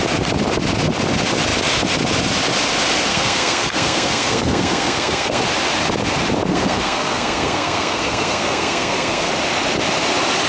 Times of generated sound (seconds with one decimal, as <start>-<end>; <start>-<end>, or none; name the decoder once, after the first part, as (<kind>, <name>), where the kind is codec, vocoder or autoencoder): 3.1-5.4 (codec, SNAC); 6.5-9.3